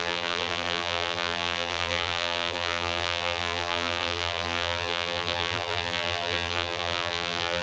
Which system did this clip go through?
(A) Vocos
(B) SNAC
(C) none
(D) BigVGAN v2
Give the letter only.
D